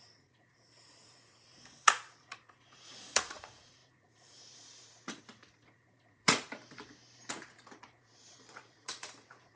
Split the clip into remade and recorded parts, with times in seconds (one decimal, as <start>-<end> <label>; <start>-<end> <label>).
0.0-6.6 remade; 6.6-7.3 recorded; 7.3-9.6 remade